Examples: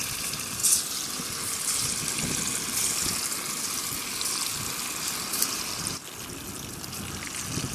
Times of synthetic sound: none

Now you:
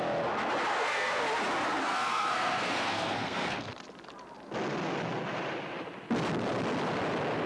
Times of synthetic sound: 0.7-1.2 (codec, SNAC); 1.8-3.7

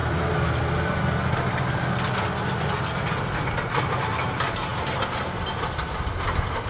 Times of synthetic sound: none

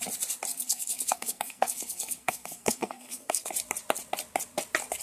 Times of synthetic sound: 0.5-3.5 (codec, SNAC)